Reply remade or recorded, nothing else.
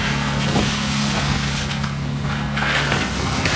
remade